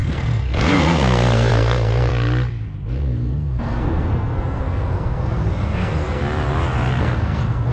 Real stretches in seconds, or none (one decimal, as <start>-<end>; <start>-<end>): 2.1-2.9; 6.2-7.0